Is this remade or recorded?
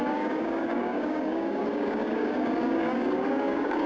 remade